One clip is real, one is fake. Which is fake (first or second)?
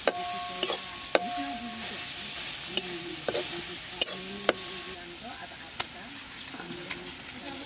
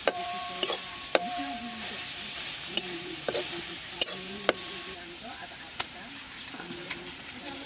second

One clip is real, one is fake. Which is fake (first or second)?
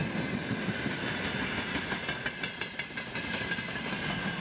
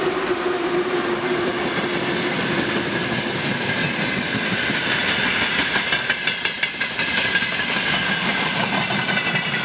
second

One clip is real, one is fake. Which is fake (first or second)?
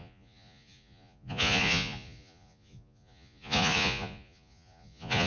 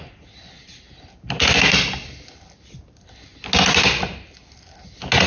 first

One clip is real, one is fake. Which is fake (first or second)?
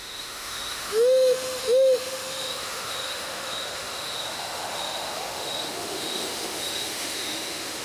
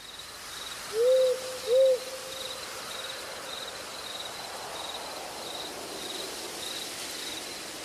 first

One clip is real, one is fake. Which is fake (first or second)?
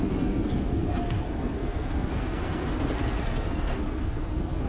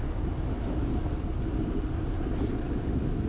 first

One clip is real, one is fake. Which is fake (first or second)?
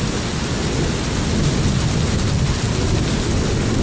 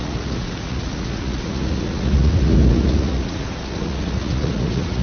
second